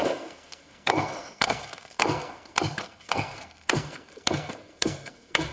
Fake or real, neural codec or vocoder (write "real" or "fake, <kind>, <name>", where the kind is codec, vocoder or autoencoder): fake, codec, SNAC